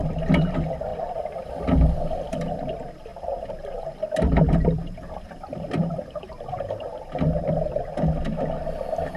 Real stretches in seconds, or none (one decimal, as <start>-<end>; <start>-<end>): 0.0-3.1; 7.2-9.2